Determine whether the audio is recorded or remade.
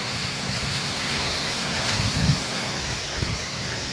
remade